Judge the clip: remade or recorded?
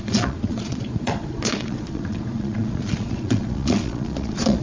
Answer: remade